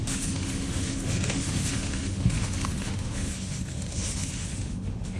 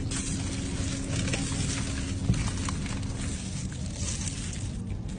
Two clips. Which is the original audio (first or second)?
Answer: second